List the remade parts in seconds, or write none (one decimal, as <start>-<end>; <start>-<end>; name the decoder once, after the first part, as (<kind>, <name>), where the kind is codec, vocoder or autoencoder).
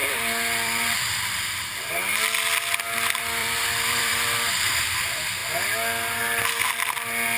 0.0-1.9 (vocoder, BigVGAN v2); 3.4-5.0